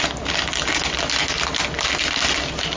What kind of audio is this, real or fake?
real